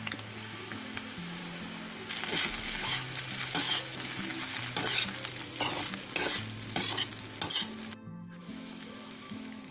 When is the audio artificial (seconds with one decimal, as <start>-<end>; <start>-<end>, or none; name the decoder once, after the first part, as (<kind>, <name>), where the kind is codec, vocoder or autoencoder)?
0.0-1.4 (autoencoder, DAC-VAE); 2.5-4.3; 8.4-9.7